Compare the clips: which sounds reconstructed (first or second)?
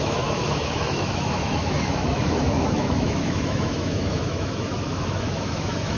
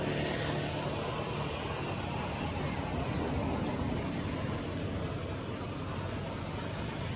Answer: first